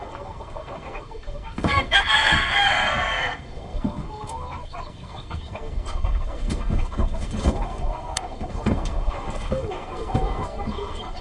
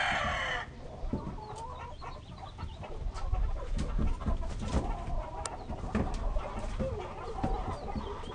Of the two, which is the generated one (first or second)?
first